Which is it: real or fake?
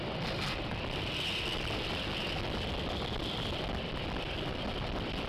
real